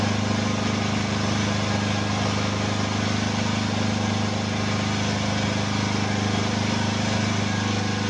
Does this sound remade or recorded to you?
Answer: recorded